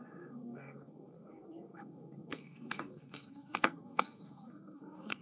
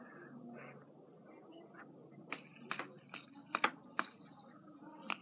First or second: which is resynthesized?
first